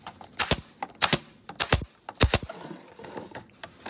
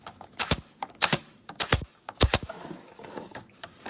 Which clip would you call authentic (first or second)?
first